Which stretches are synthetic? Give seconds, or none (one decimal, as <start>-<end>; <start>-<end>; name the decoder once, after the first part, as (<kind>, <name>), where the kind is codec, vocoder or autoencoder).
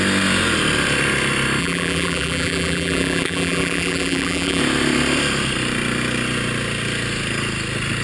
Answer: 1.6-4.6 (vocoder, BigVGAN v2)